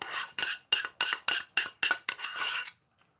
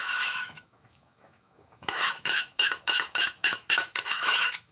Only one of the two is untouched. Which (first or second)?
first